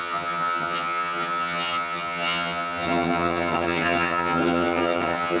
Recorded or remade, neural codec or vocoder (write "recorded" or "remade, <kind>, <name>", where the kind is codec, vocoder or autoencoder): remade, vocoder, HiFi-GAN